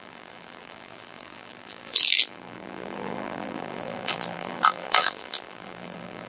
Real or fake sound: fake